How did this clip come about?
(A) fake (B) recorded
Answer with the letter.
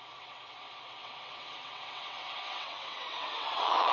A